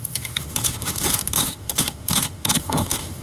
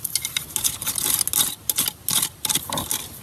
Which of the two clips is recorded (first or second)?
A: second